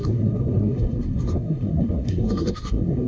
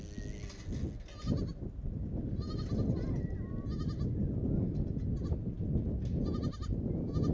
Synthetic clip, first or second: first